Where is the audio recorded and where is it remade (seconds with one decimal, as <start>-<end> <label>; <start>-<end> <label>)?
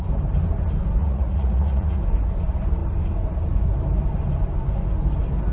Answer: 0.0-1.0 recorded; 1.0-2.0 remade; 2.0-5.5 recorded